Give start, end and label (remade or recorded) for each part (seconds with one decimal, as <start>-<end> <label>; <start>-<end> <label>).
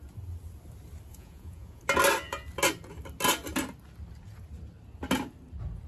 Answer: 0.0-1.1 recorded; 1.1-1.8 remade; 1.8-5.9 recorded